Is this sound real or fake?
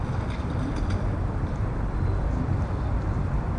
real